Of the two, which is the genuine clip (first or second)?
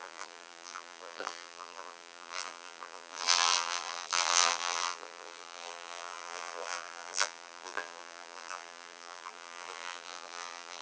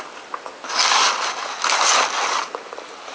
second